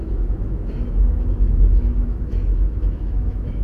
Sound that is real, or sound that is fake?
fake